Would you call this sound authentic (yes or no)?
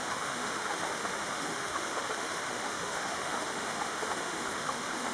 no